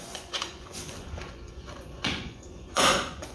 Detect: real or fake fake